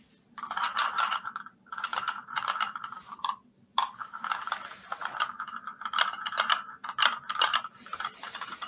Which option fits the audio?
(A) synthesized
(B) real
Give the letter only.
A